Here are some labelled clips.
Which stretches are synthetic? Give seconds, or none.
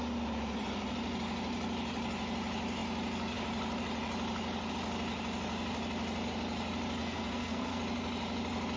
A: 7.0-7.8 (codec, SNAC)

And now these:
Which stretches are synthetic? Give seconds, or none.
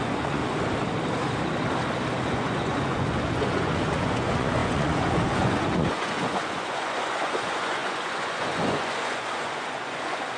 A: 0.0-0.4 (vocoder, Vocos); 2.2-10.4